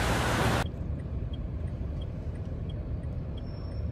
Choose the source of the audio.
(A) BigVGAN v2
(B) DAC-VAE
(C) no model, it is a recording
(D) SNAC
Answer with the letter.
A